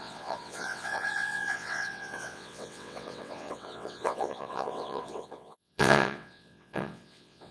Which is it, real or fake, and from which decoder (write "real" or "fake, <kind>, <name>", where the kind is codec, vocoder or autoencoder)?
fake, vocoder, WaveNeXt